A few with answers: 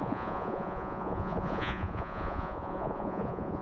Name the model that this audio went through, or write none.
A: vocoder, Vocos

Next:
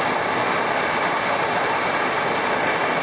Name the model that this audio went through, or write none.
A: none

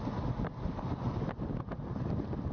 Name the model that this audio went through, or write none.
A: none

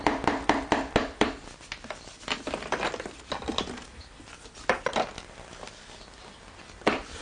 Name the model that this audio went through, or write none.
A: none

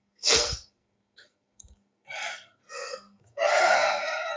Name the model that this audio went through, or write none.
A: codec, SNAC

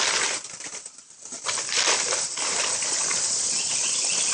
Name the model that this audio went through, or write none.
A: vocoder, BigVGAN v2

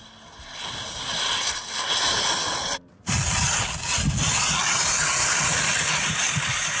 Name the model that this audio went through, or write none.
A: none